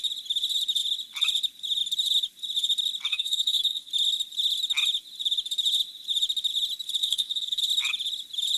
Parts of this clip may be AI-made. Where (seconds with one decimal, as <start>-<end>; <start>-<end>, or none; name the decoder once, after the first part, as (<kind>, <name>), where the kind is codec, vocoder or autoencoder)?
3.1-3.9 (codec, SNAC); 7.0-7.6